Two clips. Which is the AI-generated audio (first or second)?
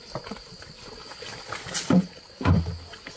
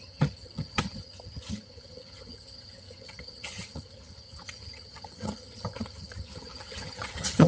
second